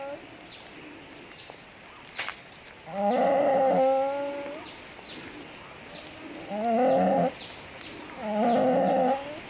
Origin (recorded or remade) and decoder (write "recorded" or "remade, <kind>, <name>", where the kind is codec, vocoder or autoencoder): recorded